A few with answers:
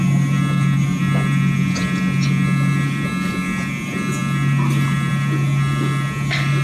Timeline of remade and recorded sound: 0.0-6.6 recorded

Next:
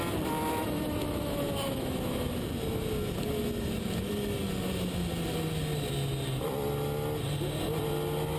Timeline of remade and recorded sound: 0.0-0.6 recorded; 0.6-2.4 remade; 2.4-8.4 recorded

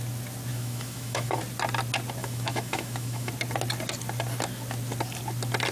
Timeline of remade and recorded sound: 0.0-0.5 recorded; 0.5-1.4 remade; 1.4-2.2 recorded; 2.2-3.3 remade; 3.3-5.7 recorded

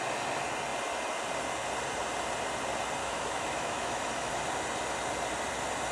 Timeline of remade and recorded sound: 0.0-3.0 recorded; 3.0-4.3 remade; 4.3-5.9 recorded

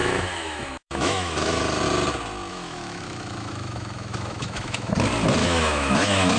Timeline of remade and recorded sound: 0.0-1.6 remade; 1.6-2.5 recorded; 2.5-4.9 remade; 4.9-5.4 recorded; 5.4-6.4 remade

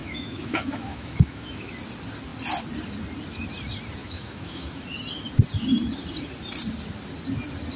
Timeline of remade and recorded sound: 0.0-1.7 remade; 1.7-4.0 recorded; 4.0-4.8 remade; 4.8-7.8 recorded

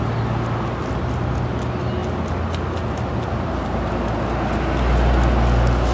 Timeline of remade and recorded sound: 0.0-5.9 recorded

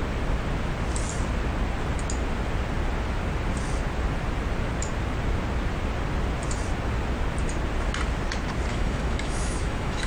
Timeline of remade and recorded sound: 0.0-8.7 recorded; 8.7-10.1 remade